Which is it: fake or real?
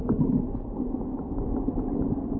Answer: real